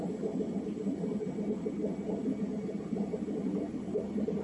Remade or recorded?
recorded